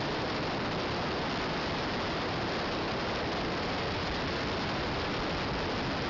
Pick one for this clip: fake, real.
real